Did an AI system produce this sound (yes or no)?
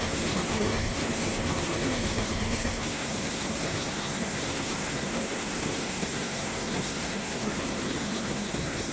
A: yes